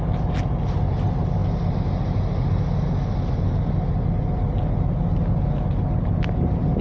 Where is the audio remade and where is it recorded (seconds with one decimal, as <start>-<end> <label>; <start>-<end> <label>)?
0.0-6.8 recorded